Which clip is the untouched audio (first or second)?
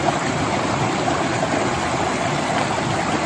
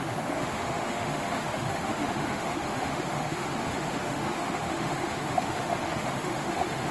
first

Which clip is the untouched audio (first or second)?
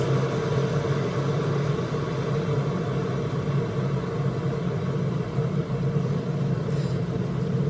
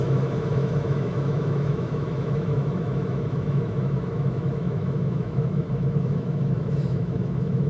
first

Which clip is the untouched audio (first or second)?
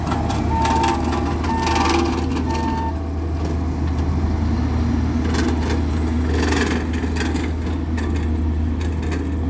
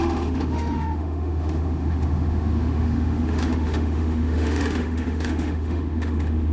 first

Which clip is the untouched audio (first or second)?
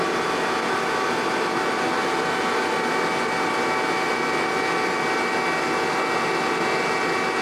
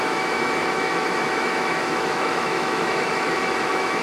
first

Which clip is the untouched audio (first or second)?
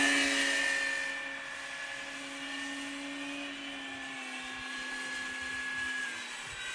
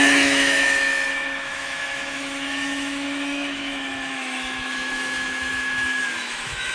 first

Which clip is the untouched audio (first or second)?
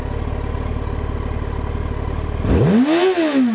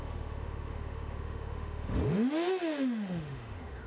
first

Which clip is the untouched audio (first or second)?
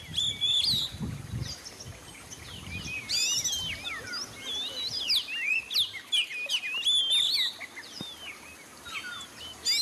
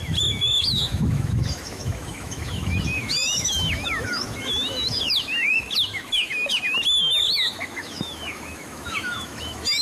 first